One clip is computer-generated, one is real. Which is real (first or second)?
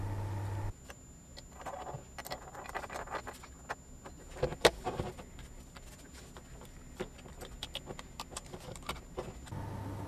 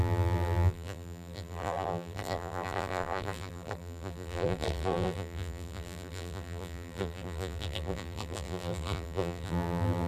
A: first